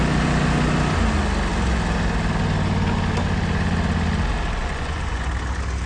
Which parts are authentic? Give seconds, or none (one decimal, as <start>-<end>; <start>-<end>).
0.0-4.6; 5.3-5.9